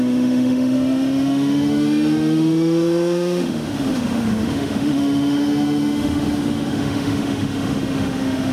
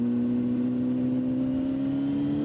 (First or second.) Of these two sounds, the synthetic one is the first